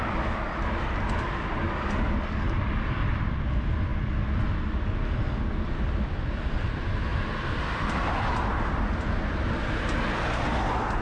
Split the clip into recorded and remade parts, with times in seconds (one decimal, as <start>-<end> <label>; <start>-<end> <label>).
0.0-11.0 recorded